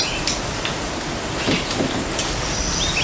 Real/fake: real